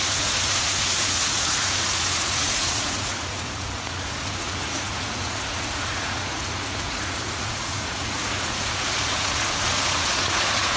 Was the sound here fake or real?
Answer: fake